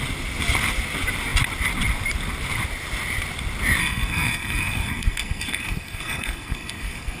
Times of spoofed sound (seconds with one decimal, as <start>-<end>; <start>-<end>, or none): 3.8-7.2